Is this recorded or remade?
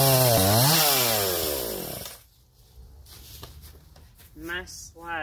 recorded